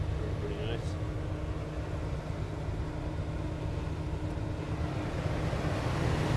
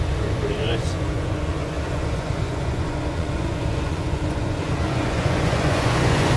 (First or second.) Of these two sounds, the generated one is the second